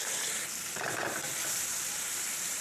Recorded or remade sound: remade